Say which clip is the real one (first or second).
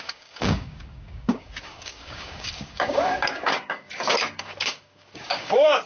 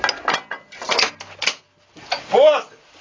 second